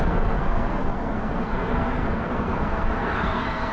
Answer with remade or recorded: remade